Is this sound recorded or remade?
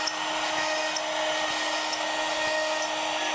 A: recorded